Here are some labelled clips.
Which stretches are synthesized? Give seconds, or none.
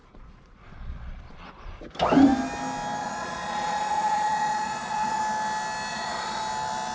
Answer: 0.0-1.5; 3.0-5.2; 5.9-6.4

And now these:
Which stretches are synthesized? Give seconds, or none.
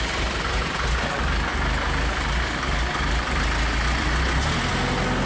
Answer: none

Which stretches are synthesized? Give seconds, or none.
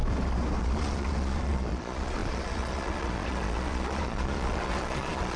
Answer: 0.6-5.4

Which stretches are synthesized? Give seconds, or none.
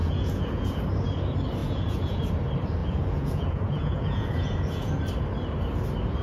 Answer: 0.0-0.8; 1.6-2.3; 2.8-4.9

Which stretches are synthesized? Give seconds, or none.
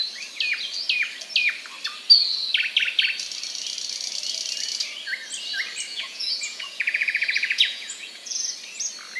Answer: 5.9-8.5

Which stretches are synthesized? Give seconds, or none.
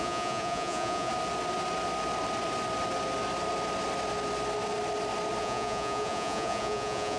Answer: 0.0-1.1; 5.4-7.2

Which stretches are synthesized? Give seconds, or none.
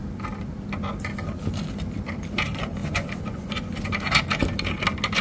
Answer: 2.8-3.8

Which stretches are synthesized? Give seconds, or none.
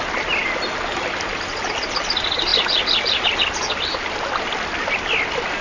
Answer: none